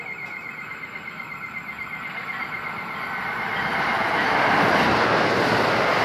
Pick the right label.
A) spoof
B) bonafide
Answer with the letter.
B